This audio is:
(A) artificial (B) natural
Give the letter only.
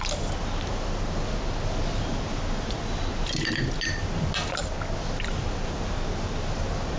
B